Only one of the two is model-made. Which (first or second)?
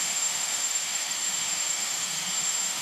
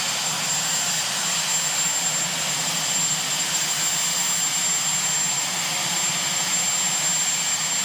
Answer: first